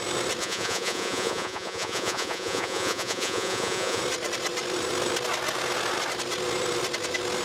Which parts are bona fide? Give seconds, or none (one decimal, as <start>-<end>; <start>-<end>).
0.0-0.4; 4.0-7.4